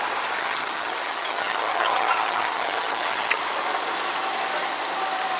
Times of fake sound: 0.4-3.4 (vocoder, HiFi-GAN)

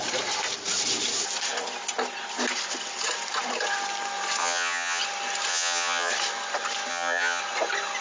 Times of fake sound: 4.4-5.0 (vocoder, HiFi-GAN); 5.5-6.1; 6.9-7.4

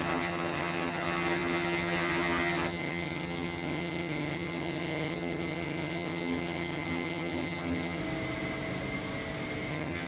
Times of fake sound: 0.0-8.0 (vocoder, HiFi-GAN); 9.7-10.1

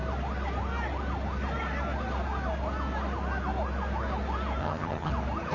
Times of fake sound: 4.6-5.1 (vocoder, HiFi-GAN)

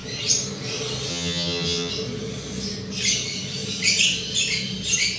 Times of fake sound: 1.1-1.9 (vocoder, HiFi-GAN)

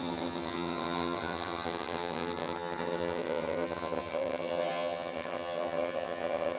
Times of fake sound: 0.0-6.6 (vocoder, HiFi-GAN)